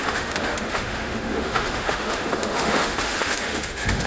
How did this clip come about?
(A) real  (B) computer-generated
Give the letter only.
B